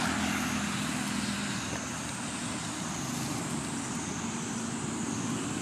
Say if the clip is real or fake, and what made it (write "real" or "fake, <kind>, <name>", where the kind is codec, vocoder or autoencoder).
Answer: real